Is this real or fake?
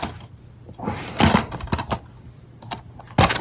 real